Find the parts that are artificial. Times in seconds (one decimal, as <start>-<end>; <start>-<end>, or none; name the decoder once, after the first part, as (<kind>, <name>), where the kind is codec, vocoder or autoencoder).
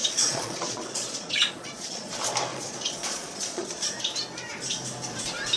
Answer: 0.0-2.1 (vocoder, Vocos); 2.5-3.9